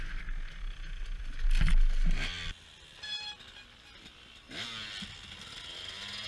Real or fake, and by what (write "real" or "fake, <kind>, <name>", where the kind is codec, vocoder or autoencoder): real